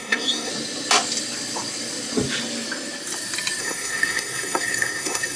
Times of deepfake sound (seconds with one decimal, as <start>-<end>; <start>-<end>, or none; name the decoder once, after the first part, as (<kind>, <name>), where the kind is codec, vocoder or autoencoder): 0.0-0.5 (codec, SNAC); 3.6-5.4